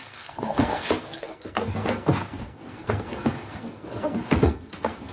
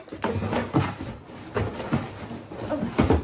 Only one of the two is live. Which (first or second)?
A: second